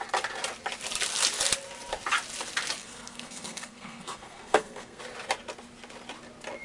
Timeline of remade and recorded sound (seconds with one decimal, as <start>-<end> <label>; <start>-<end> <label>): 0.0-2.8 recorded; 2.8-5.0 remade; 5.0-6.6 recorded